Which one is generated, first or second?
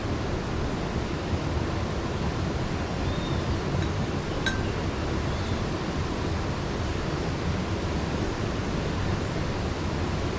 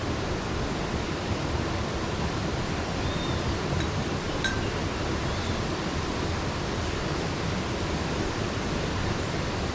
second